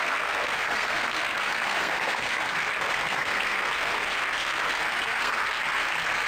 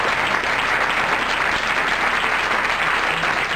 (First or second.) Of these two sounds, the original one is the second